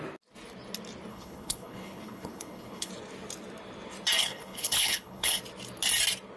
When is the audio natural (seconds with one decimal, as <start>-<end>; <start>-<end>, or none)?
0.0-1.1; 2.9-4.2; 5.4-6.4